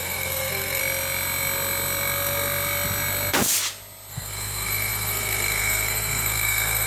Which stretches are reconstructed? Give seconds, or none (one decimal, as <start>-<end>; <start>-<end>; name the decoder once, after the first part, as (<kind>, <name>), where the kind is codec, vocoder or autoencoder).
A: 0.0-0.8 (codec, SNAC); 4.1-6.9